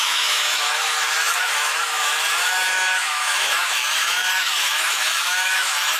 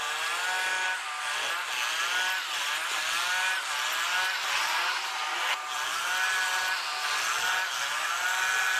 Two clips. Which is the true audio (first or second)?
second